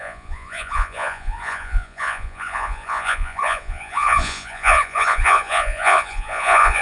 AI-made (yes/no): yes